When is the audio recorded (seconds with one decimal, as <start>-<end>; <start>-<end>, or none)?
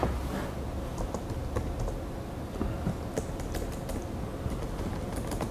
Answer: 0.0-5.5